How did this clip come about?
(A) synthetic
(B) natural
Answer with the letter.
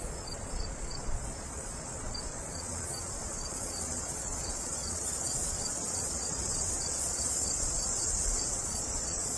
A